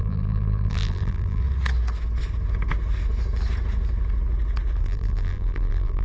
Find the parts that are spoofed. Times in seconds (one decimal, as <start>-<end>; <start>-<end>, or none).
0.0-1.4; 4.8-6.0